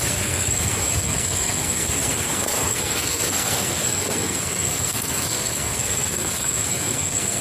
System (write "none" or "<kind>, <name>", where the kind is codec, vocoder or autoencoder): codec, SNAC